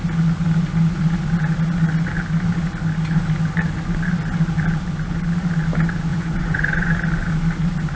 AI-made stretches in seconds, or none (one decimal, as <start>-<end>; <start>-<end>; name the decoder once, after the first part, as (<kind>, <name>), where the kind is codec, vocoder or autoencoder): 6.1-6.9 (vocoder, Vocos)